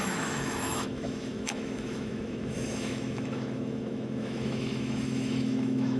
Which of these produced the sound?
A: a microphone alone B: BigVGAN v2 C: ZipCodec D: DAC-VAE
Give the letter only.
D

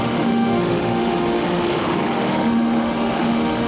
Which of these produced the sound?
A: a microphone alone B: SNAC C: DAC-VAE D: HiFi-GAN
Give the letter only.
C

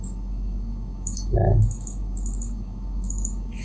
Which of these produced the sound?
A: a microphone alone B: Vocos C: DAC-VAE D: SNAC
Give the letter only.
C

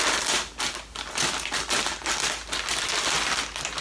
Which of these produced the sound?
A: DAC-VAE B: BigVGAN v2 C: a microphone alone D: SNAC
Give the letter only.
C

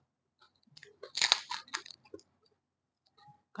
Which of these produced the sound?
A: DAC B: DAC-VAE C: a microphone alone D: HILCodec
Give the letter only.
C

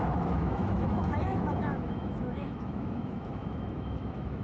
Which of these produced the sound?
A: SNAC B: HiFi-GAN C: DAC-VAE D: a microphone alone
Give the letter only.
C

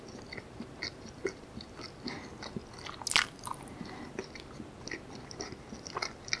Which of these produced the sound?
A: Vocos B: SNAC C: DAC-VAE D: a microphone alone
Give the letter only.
D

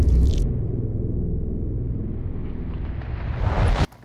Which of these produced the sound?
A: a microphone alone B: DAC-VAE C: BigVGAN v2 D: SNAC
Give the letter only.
A